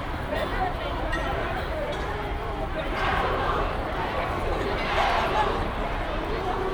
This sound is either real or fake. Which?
fake